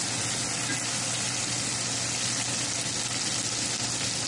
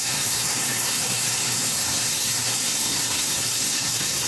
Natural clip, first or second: first